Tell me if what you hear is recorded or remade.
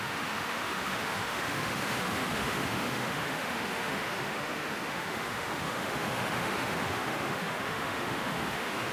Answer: remade